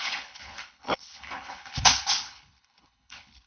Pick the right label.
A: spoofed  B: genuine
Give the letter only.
A